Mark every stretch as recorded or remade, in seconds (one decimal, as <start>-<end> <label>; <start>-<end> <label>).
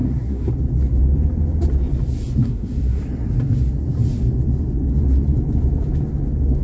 0.0-0.5 remade; 0.5-2.4 recorded; 2.4-3.0 remade; 3.0-6.6 recorded